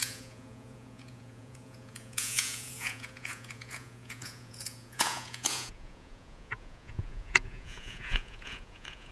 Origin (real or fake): fake